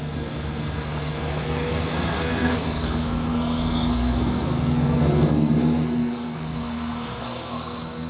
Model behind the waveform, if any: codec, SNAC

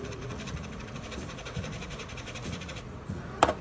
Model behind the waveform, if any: vocoder, Vocos